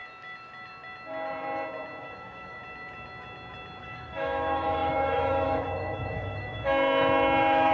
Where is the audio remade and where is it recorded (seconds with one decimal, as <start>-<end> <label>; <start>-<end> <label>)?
0.0-2.0 recorded; 2.0-2.6 remade; 2.6-3.8 recorded; 3.8-7.7 remade